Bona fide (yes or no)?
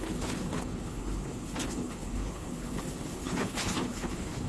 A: no